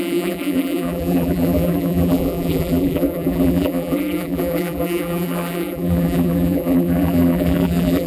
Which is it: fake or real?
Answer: fake